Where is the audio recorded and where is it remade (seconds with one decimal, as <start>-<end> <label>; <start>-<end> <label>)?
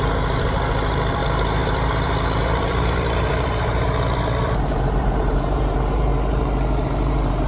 0.0-6.1 remade; 6.1-6.8 recorded; 6.8-7.5 remade